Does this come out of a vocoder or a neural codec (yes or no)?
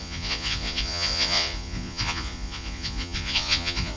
yes